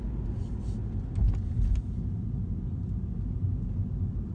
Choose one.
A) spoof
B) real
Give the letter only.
B